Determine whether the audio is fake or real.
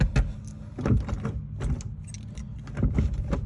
real